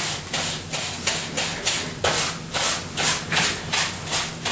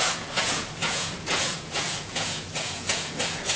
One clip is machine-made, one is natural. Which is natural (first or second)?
first